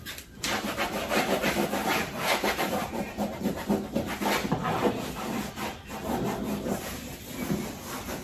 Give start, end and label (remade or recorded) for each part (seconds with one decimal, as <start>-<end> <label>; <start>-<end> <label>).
0.0-1.8 recorded; 1.8-3.7 remade; 3.7-8.2 recorded